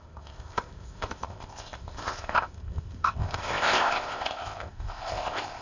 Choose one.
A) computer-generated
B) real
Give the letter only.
A